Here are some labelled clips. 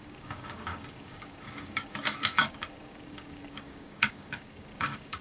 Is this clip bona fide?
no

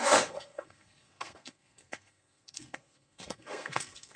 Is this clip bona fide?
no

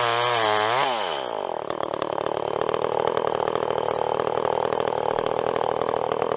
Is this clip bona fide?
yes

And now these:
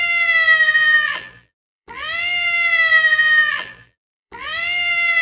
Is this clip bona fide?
no